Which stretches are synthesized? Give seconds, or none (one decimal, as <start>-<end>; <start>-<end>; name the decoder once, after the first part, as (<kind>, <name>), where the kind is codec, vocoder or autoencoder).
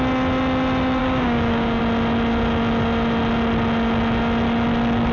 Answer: 1.0-1.8 (codec, DAC)